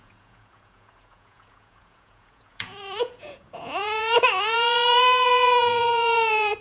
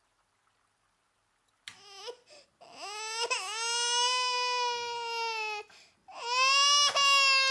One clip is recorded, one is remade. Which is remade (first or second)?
first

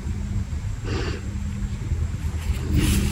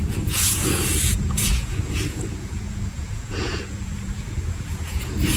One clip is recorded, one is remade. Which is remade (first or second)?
second